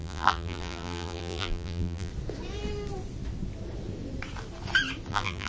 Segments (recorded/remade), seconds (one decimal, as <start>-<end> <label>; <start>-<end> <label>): 0.0-2.1 remade; 2.1-5.1 recorded; 5.1-5.5 remade